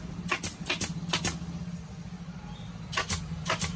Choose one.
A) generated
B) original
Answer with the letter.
B